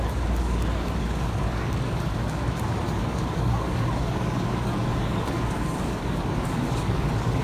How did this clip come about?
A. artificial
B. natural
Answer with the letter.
A